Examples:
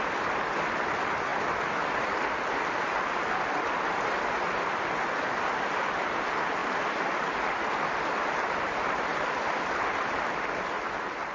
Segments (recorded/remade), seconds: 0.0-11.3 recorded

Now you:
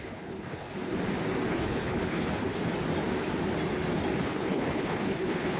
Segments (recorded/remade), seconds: 0.0-0.9 remade; 0.9-1.5 recorded; 1.5-2.7 remade; 2.7-4.2 recorded; 4.2-5.6 remade

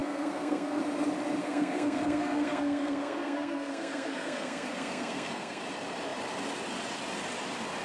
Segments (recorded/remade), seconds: 0.0-0.8 remade; 0.8-1.4 recorded; 1.4-5.6 remade; 5.6-7.8 recorded

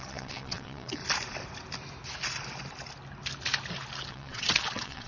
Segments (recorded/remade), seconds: 0.0-1.0 remade; 1.0-4.1 recorded; 4.1-5.1 remade